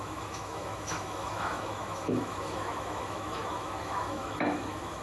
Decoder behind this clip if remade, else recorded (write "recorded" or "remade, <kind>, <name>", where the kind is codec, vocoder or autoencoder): remade, autoencoder, DAC-VAE